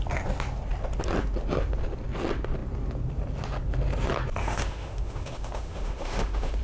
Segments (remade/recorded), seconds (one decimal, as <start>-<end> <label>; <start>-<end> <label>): 0.0-4.4 recorded; 4.4-6.6 remade